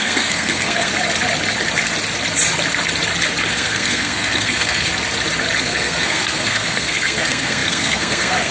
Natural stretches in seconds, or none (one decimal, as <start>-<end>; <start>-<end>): 0.9-3.5; 4.9-5.6